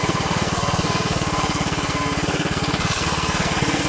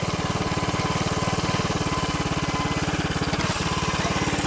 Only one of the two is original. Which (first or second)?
second